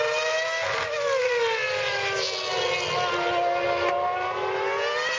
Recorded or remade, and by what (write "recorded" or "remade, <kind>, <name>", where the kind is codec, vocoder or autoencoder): recorded